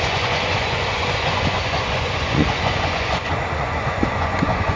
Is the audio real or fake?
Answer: fake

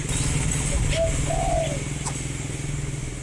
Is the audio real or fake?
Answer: real